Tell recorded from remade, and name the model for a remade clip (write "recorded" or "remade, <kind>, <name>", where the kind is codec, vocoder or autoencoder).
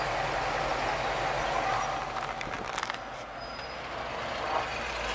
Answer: recorded